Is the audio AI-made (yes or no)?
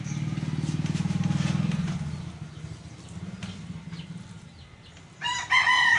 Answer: no